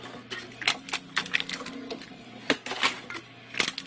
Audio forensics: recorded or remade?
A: recorded